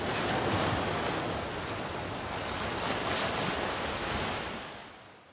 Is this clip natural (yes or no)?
yes